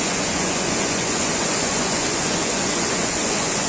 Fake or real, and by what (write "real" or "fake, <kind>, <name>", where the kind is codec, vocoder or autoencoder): fake, vocoder, Vocos